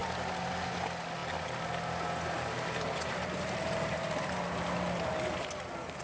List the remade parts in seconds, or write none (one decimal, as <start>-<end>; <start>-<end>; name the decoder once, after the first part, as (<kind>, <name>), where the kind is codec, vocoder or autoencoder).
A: none